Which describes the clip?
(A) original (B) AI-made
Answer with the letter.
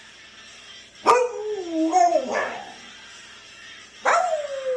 A